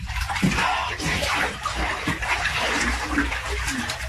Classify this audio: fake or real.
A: real